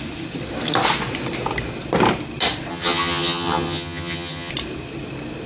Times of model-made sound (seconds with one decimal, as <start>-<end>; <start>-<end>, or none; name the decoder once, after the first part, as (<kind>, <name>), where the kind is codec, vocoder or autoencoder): 2.7-4.5 (vocoder, HiFi-GAN)